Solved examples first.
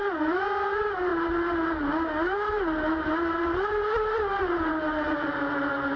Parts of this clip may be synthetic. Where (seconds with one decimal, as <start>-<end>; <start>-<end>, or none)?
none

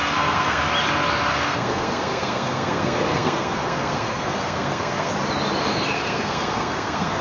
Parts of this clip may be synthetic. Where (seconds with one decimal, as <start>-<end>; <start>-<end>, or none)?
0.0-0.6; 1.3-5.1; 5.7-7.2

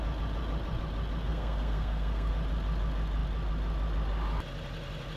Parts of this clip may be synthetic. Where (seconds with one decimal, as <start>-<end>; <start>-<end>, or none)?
1.3-2.3

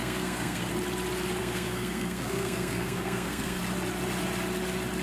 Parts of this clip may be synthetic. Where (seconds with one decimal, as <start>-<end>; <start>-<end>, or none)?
0.0-0.7; 1.4-3.6